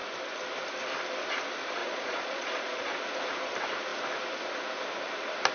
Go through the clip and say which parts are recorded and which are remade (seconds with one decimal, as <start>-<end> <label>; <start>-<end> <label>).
0.0-1.8 recorded; 1.8-2.9 remade; 2.9-5.5 recorded